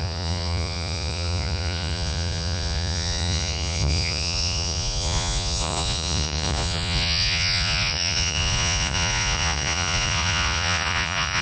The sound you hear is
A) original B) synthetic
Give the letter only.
B